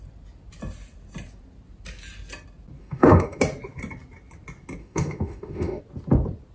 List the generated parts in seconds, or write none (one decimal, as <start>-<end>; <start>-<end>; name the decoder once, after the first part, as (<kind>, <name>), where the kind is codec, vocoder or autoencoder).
2.8-3.4 (autoencoder, DAC-VAE); 4.8-5.8